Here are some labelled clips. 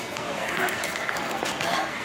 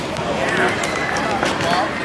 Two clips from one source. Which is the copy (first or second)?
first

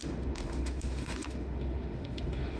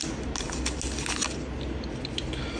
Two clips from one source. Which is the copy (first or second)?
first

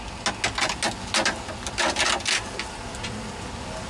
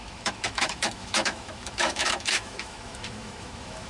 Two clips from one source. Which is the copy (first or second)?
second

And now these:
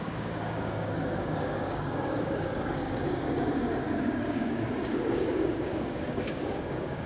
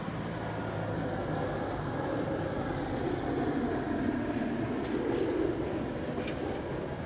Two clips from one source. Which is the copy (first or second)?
first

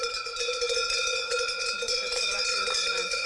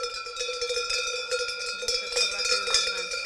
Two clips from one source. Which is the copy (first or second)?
first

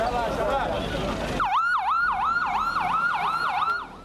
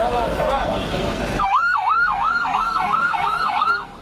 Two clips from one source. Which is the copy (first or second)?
second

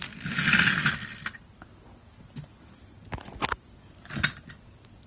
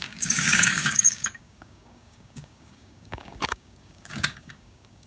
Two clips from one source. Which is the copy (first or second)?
second